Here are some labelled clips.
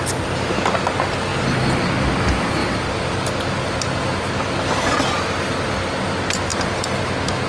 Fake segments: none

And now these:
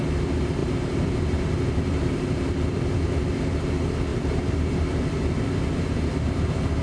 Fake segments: 0.6-2.5 (vocoder, BigVGAN v2); 4.1-5.1

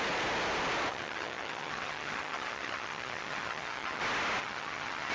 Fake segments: 0.9-4.0 (vocoder, HiFi-GAN); 4.4-5.1

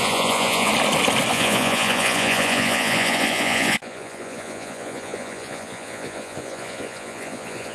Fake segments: 0.0-0.7 (vocoder, Vocos); 1.3-7.7

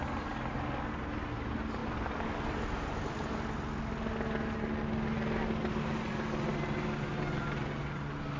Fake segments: none

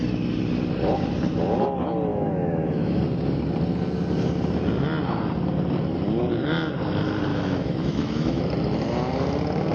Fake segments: 2.1-3.0 (autoencoder, DAC-VAE); 7.3-8.4

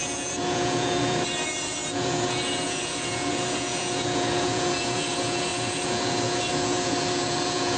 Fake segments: 0.0-7.8 (vocoder, Vocos)

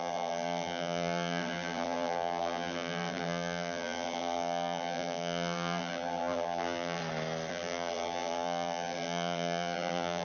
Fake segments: 0.0-7.0 (vocoder, BigVGAN v2); 7.5-10.2